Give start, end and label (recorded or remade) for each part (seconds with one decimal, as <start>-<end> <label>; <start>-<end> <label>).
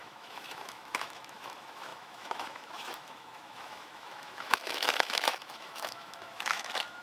0.0-7.0 remade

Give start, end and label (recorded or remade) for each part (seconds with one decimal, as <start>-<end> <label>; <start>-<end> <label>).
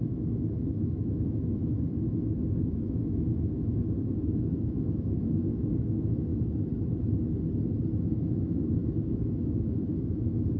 0.0-6.3 remade; 6.3-8.0 recorded; 8.0-10.6 remade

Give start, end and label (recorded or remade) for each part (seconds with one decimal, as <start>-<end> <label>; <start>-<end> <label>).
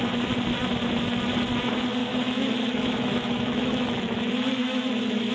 0.0-2.0 recorded; 2.0-5.3 remade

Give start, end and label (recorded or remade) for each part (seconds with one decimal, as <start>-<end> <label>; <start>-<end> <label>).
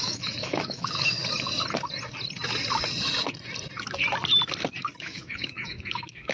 0.0-1.2 remade; 1.2-5.0 recorded; 5.0-6.3 remade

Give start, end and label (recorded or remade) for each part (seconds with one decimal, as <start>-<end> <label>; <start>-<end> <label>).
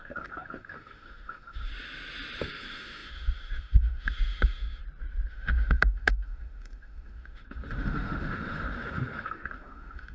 0.0-1.7 remade; 1.7-2.4 recorded; 2.4-4.8 remade; 4.8-5.3 recorded; 5.3-10.1 remade